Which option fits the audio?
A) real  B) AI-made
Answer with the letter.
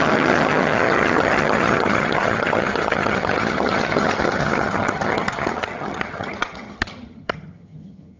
B